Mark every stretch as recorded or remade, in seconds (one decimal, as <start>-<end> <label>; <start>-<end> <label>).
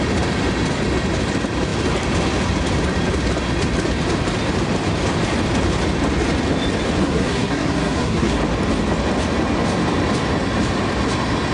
0.0-7.0 recorded; 7.0-8.4 remade; 8.4-11.5 recorded